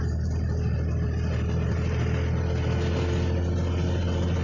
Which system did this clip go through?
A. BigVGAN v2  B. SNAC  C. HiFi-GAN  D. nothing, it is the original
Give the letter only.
D